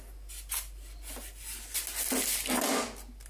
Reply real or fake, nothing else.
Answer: real